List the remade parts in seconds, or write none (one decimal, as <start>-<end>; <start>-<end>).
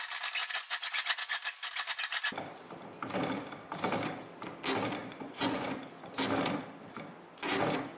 0.4-1.4; 5.0-5.7